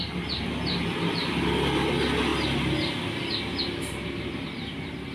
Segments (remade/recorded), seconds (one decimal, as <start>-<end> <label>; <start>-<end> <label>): 0.0-2.3 remade; 2.3-3.6 recorded; 3.6-5.1 remade